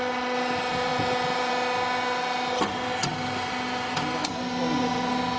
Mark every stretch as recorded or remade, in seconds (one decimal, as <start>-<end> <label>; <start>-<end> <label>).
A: 0.0-5.4 recorded